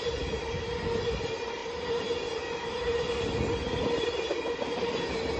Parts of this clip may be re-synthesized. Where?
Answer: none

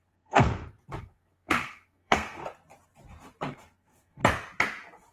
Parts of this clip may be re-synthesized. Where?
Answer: 0.0-0.5 (codec, SNAC); 1.0-2.4; 3.5-4.2

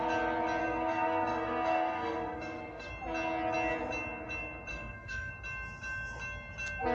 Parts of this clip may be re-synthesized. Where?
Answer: 0.6-2.9 (codec, SNAC); 4.7-5.3

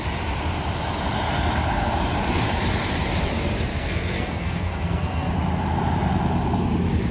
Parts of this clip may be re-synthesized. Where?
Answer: 3.7-5.3 (codec, SNAC)

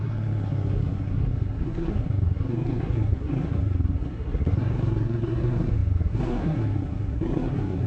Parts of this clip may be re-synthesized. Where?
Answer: 0.0-7.9 (codec, SNAC)

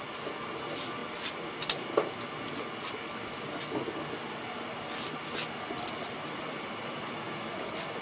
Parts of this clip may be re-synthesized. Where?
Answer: none

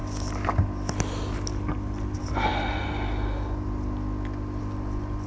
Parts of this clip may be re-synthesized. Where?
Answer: none